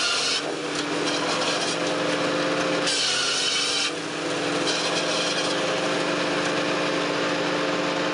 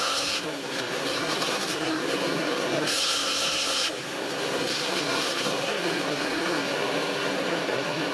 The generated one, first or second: second